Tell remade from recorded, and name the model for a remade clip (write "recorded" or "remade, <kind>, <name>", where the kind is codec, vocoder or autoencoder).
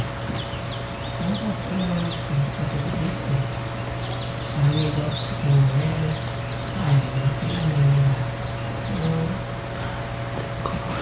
recorded